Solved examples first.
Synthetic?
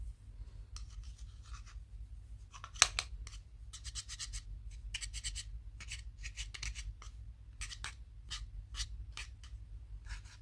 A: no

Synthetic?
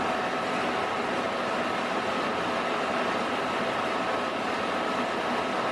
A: no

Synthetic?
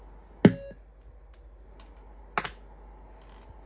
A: no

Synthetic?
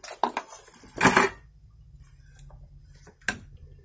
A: no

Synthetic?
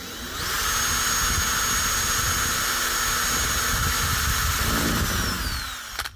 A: no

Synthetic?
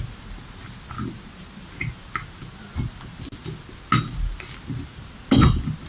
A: no